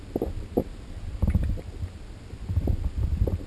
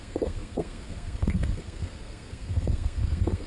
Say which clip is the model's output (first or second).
second